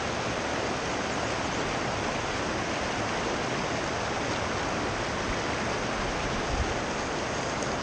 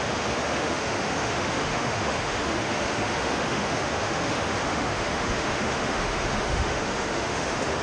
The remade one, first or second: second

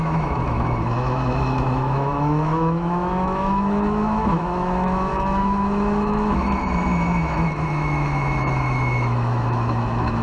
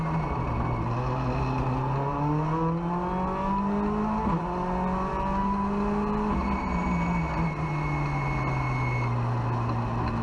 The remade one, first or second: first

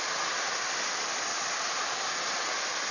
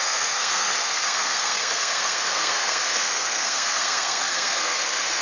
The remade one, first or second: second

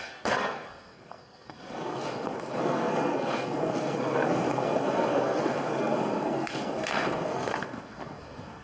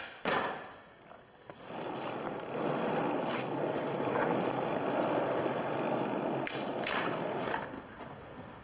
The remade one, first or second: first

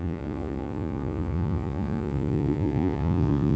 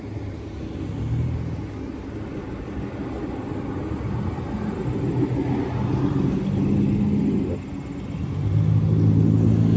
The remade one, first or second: first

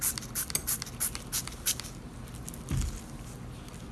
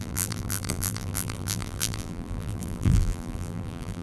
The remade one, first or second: second